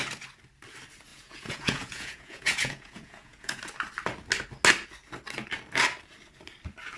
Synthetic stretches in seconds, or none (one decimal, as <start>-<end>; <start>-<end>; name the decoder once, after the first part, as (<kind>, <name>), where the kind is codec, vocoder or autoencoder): 1.1-3.6 (vocoder, Vocos)